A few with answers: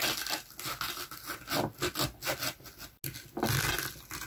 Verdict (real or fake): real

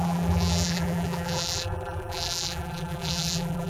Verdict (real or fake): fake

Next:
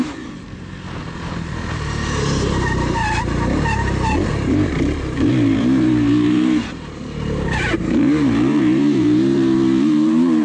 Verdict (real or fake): fake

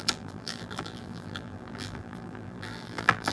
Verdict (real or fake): fake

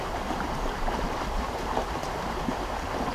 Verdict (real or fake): fake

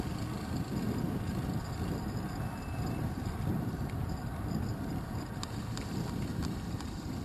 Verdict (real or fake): real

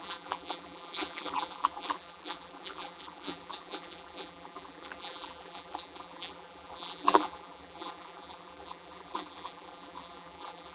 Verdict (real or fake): fake